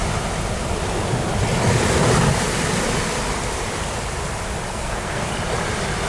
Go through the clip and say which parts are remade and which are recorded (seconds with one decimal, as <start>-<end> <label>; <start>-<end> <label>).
0.0-4.7 recorded; 4.7-5.3 remade; 5.3-6.1 recorded